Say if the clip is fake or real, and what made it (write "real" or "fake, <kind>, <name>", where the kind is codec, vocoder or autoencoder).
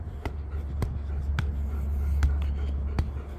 real